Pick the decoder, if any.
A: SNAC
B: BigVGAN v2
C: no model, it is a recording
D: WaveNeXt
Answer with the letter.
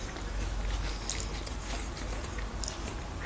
C